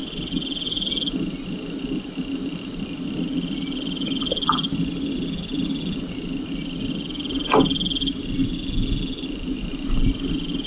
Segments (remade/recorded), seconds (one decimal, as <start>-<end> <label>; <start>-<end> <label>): 0.0-10.7 recorded